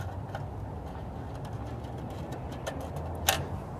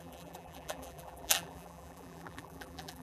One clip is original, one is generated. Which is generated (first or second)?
second